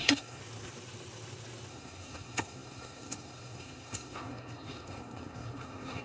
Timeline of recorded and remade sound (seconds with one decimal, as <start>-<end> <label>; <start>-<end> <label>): 0.0-0.4 remade; 0.4-1.7 recorded; 1.7-6.0 remade